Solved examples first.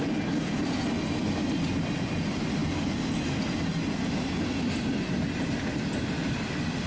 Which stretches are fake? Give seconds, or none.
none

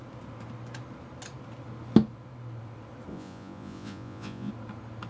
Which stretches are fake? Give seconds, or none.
3.1-4.5 (vocoder, Vocos)